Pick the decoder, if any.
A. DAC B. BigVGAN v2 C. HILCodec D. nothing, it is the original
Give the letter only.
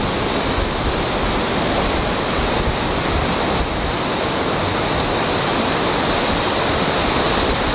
D